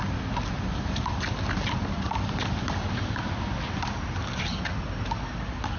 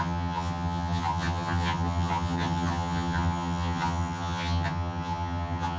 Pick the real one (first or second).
first